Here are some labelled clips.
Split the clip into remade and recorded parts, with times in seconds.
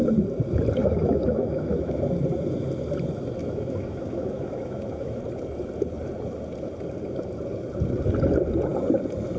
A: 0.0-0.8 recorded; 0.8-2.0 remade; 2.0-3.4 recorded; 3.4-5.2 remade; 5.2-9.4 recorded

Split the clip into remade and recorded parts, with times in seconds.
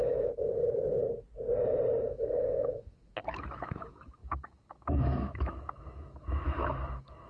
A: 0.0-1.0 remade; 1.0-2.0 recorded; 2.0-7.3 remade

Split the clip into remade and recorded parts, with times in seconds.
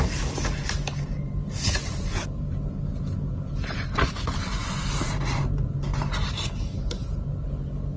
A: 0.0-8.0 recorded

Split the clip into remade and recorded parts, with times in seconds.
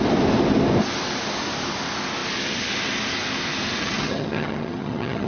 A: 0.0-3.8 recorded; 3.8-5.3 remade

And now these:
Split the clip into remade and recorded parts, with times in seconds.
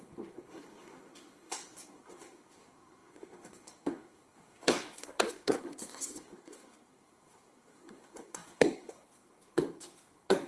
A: 0.0-10.5 remade